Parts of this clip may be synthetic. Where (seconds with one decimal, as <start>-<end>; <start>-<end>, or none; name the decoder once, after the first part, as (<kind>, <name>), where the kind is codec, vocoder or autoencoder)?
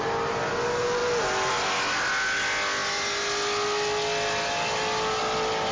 none